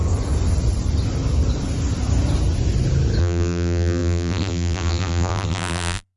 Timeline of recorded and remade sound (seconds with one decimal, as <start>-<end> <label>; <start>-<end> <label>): 0.0-3.2 recorded; 3.2-6.2 remade